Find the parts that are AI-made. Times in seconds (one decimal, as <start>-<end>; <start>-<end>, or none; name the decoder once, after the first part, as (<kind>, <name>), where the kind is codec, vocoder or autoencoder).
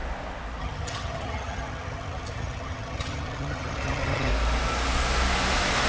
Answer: 0.6-4.3 (vocoder, HiFi-GAN)